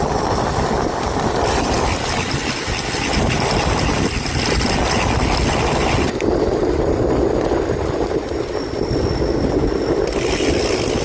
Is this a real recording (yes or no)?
yes